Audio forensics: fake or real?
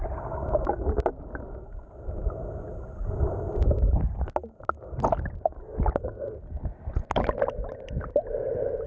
real